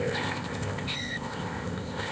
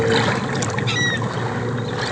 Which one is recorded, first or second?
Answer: second